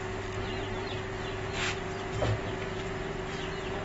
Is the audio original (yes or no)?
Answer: yes